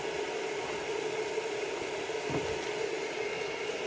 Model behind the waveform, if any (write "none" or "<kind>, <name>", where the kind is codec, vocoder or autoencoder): none